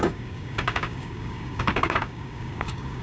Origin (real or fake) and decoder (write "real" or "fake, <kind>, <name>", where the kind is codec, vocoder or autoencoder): fake, codec, DAC